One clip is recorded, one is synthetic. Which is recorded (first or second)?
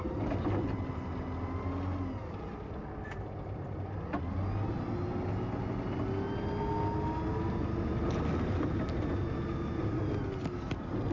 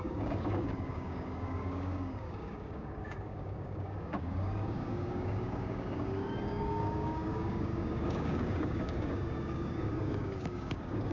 first